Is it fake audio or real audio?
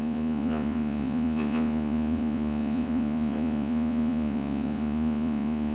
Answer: fake